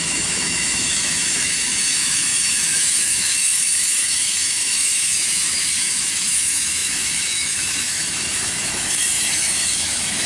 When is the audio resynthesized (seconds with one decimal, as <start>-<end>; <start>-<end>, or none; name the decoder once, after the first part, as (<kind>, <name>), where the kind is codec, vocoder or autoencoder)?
0.0-10.3 (autoencoder, DAC-VAE)